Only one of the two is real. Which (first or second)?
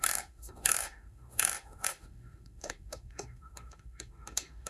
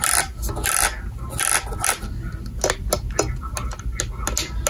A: second